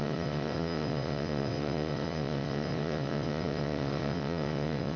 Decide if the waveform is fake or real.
fake